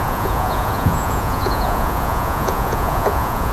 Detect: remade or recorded remade